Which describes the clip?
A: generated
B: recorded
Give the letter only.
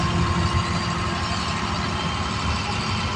B